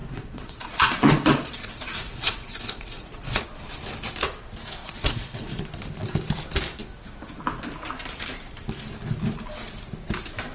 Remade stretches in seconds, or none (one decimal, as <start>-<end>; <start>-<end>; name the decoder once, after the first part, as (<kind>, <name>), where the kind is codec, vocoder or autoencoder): 0.0-3.4 (vocoder, Vocos); 4.8-5.6

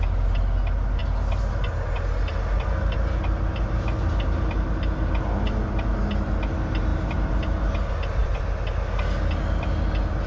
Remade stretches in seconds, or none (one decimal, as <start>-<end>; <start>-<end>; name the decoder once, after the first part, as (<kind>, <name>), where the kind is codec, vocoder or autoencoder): none

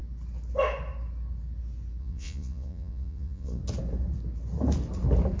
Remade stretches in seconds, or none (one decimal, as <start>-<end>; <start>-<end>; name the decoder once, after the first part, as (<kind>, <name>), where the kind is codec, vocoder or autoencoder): 2.0-3.6 (vocoder, Vocos)